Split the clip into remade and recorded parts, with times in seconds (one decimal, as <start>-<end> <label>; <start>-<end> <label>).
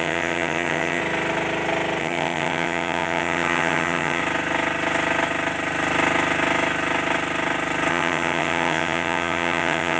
0.0-1.0 remade; 1.0-2.0 recorded; 2.0-4.2 remade; 4.2-7.9 recorded; 7.9-10.0 remade